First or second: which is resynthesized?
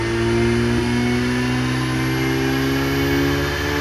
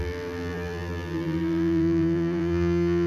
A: second